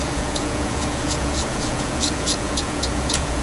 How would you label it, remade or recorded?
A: remade